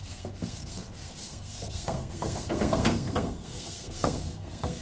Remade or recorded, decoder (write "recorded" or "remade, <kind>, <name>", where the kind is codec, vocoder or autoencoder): remade, codec, SNAC